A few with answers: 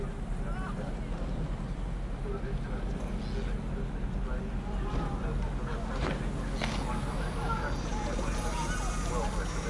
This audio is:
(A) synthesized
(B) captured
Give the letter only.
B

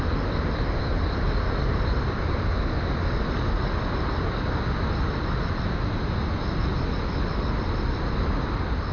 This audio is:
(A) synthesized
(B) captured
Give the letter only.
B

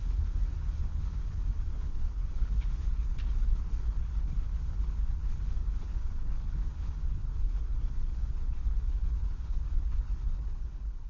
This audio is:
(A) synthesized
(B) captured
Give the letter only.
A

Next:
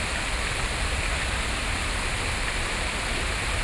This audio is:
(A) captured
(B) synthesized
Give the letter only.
A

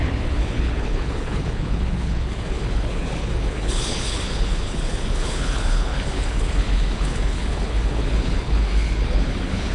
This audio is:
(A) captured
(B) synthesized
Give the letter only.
B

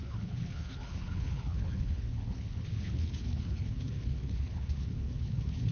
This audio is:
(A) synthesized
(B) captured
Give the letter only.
A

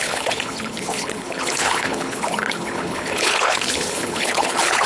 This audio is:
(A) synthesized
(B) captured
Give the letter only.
A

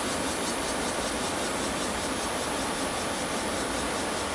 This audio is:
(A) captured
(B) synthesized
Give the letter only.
A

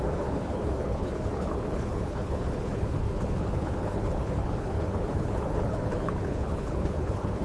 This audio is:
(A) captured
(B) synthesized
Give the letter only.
B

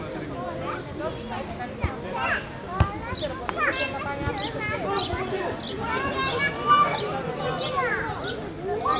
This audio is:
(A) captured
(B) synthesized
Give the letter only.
A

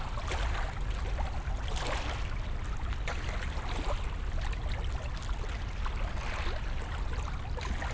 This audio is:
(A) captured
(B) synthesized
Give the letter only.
A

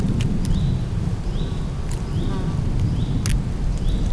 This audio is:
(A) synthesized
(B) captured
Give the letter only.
B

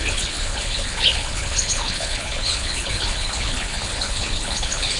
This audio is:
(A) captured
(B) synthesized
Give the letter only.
B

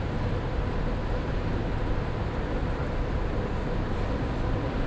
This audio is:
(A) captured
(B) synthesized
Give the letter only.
A